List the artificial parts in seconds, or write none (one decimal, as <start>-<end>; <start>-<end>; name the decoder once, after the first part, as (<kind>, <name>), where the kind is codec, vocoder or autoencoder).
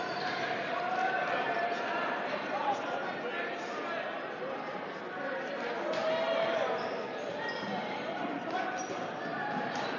0.0-2.6 (vocoder, BigVGAN v2); 5.5-10.0